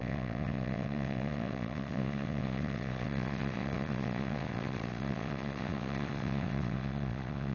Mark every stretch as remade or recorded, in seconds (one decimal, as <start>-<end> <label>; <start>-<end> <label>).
0.0-7.5 remade